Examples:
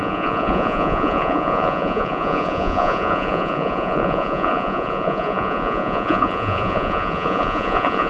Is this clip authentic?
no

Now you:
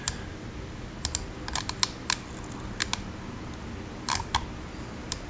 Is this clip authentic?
yes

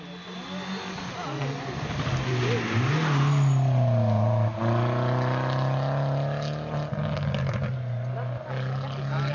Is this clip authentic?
yes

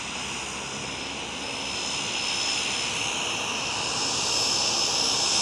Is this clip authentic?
no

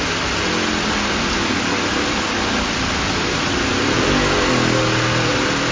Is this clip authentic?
yes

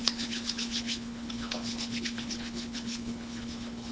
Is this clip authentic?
no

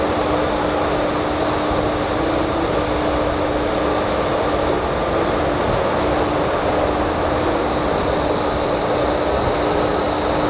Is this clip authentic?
yes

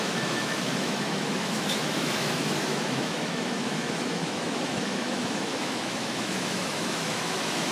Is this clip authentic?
no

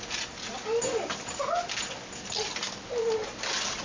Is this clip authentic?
yes